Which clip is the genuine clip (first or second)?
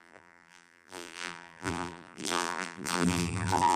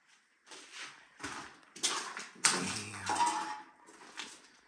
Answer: second